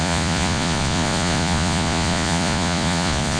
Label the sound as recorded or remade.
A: remade